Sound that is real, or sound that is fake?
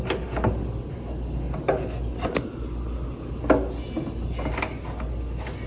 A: real